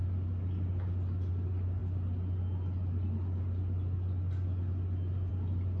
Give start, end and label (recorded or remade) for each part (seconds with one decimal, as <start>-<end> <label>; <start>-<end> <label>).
0.0-5.8 recorded